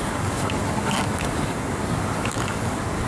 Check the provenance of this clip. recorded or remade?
remade